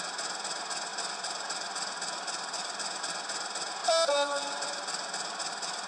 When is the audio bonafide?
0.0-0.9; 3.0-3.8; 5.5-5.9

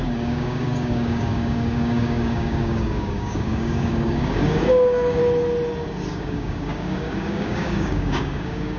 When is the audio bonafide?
5.2-6.1

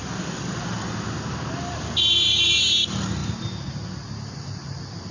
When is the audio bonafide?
0.0-5.1